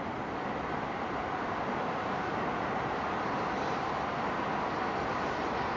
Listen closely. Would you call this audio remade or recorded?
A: recorded